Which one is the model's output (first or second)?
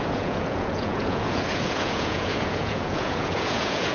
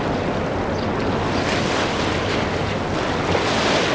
first